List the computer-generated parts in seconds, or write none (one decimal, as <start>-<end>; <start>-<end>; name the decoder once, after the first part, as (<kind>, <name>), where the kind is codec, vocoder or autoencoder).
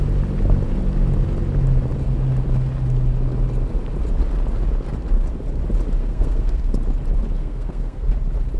6.0-6.7 (codec, SNAC); 7.4-8.1